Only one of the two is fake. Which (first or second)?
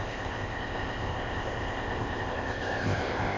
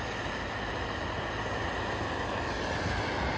first